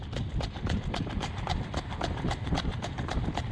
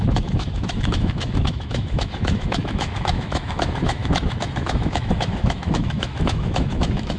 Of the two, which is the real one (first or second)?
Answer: first